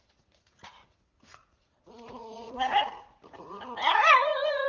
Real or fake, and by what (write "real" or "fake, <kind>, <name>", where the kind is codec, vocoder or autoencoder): fake, vocoder, Vocos